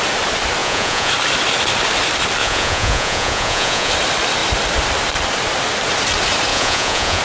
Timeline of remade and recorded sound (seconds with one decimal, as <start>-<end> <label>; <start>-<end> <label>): 0.0-0.6 recorded; 0.6-1.1 remade; 1.1-2.4 recorded; 2.4-3.9 remade; 3.9-6.5 recorded; 6.5-7.2 remade